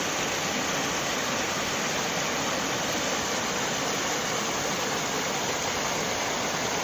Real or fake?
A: real